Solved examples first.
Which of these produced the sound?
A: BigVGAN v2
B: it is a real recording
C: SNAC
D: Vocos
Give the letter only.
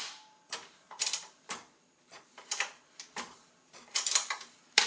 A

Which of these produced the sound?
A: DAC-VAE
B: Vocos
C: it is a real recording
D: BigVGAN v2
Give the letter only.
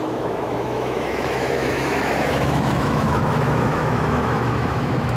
A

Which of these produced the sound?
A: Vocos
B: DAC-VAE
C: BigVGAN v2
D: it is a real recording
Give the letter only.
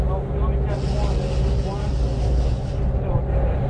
D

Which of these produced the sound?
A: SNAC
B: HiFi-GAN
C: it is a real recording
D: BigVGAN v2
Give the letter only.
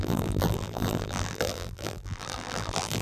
D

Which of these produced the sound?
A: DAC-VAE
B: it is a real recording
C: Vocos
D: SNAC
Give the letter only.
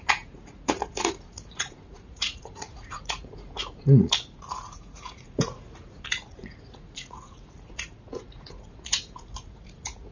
C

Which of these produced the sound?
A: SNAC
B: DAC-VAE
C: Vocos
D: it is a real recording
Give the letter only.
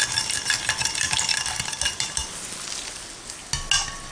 D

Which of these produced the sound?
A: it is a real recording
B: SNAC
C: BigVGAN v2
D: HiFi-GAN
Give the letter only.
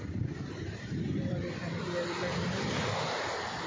A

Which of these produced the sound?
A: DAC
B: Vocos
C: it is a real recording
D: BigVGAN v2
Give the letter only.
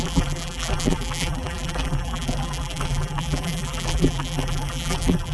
D